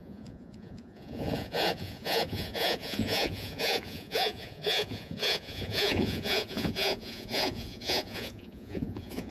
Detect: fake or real fake